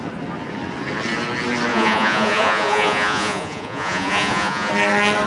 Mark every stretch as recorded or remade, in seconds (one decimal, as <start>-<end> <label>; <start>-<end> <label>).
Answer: 0.0-1.7 recorded; 1.7-4.7 remade; 4.7-5.3 recorded